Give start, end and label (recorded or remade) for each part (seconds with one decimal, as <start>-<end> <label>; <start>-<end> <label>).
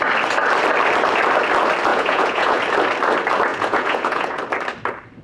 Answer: 0.0-1.9 recorded; 1.9-2.6 remade; 2.6-3.5 recorded; 3.5-4.4 remade; 4.4-5.2 recorded